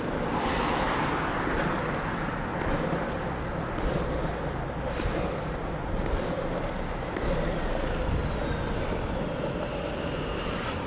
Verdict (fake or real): real